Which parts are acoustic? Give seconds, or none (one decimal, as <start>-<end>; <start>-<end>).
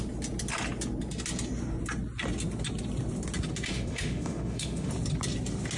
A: 0.0-3.7; 4.9-5.8